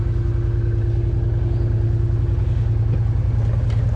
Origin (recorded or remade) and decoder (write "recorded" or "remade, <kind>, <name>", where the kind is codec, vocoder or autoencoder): recorded